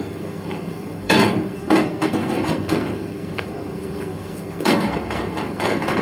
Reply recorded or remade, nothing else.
remade